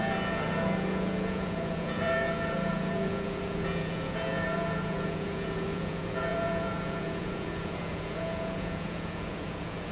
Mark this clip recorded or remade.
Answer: remade